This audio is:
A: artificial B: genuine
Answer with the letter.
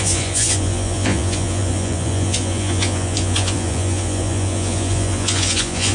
A